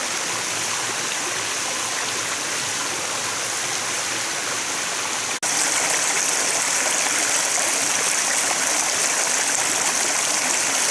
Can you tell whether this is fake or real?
real